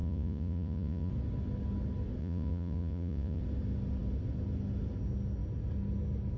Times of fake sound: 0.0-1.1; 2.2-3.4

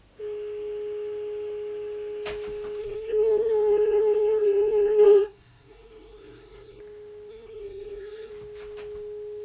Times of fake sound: 2.8-6.8; 7.3-8.3

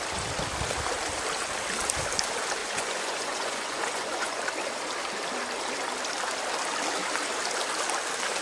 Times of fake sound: 2.6-4.4